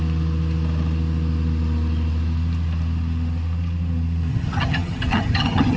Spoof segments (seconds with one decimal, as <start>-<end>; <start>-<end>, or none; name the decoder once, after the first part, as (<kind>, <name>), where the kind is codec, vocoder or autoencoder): 4.3-5.8 (vocoder, HiFi-GAN)